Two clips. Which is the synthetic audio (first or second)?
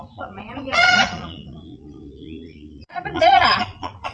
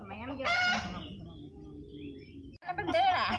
first